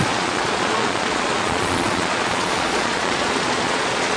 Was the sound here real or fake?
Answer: fake